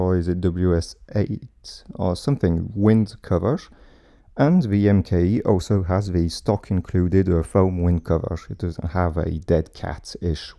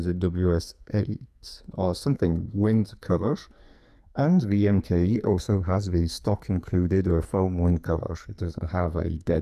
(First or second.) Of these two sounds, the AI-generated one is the second